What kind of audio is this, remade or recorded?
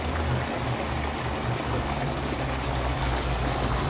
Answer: recorded